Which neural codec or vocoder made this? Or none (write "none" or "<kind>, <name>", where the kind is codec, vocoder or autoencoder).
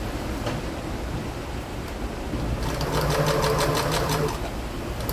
none